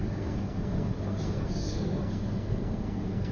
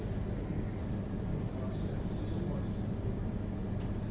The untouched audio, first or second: second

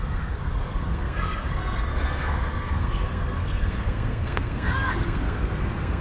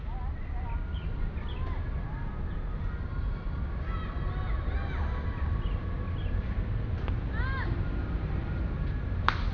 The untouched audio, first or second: second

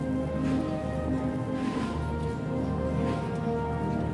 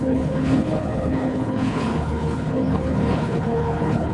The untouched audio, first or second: first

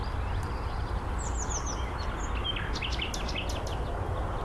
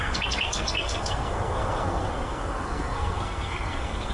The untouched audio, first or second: first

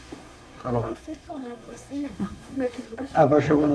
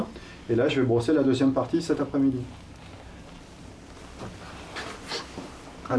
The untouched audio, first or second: second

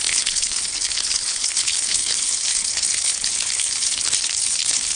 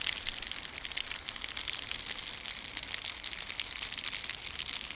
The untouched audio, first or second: second